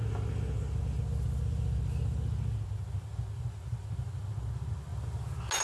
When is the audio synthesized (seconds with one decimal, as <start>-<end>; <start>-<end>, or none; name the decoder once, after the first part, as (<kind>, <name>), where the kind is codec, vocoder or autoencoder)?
none